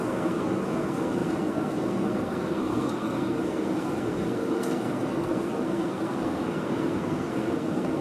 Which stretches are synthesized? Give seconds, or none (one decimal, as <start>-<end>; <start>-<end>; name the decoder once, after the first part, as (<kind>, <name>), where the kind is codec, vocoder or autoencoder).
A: 0.0-8.0 (codec, SNAC)